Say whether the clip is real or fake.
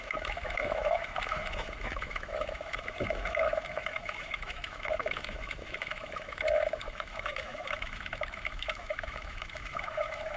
fake